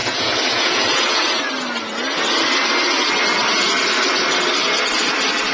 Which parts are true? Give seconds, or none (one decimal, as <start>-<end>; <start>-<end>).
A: 1.4-5.5